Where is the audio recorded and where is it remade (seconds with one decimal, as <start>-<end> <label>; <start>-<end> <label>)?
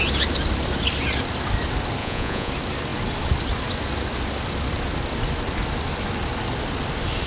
0.0-2.0 recorded; 2.0-2.5 remade; 2.5-7.3 recorded